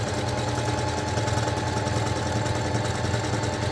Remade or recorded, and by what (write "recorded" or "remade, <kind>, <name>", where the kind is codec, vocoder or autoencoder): recorded